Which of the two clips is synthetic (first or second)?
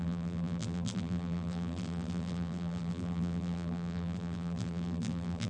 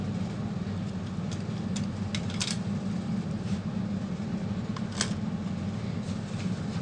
first